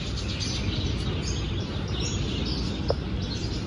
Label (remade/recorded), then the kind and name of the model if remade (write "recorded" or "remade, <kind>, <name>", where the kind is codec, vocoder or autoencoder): recorded